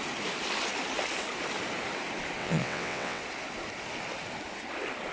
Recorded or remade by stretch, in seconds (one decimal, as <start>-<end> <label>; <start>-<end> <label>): 0.0-2.4 recorded; 2.4-3.2 remade; 3.2-5.1 recorded